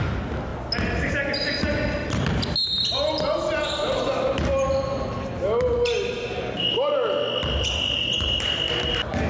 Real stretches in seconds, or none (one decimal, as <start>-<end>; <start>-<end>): 0.0-9.3